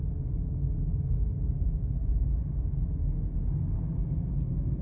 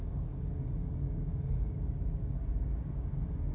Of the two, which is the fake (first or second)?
second